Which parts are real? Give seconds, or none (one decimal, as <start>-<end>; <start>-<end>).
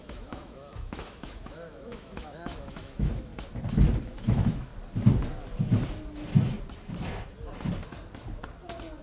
3.3-4.0; 4.7-9.0